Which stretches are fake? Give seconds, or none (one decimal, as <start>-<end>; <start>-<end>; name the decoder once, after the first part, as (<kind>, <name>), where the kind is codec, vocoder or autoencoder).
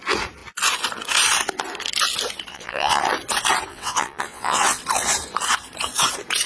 2.5-3.0 (vocoder, WaveNeXt); 3.7-4.8